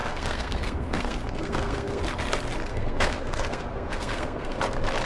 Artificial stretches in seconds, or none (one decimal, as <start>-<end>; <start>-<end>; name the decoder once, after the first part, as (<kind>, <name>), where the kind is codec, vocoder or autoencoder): 0.0-2.0 (codec, SNAC); 2.7-4.6